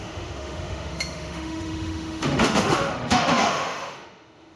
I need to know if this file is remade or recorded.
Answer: remade